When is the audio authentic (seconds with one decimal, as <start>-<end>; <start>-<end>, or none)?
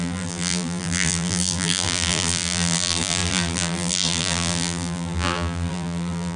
none